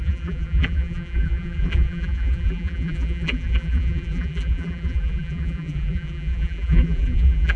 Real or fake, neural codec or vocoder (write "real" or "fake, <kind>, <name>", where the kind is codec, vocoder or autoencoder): fake, vocoder, BigVGAN v2